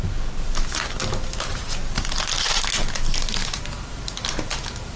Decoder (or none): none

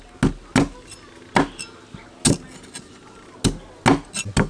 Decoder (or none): none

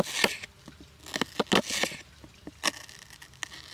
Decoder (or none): none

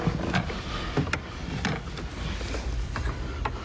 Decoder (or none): vocoder, BigVGAN v2